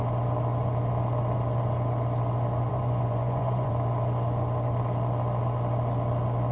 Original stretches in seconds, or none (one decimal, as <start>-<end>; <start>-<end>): 0.0-2.7; 3.7-6.5

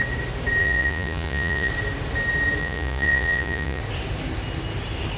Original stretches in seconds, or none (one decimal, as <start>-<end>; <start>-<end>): 0.0-0.6; 1.7-2.6; 3.8-5.2

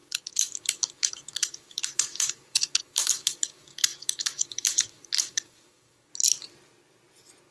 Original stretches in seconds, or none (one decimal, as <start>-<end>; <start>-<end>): 6.1-7.5

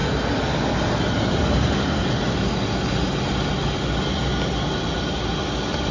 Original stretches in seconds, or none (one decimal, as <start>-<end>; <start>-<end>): 0.0-5.9

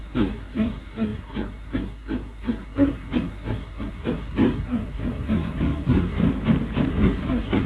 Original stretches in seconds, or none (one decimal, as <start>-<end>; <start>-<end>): 6.2-6.9

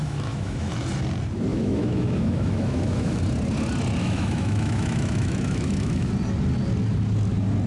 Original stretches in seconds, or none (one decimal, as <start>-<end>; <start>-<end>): 0.7-1.5; 3.2-4.0; 6.1-7.7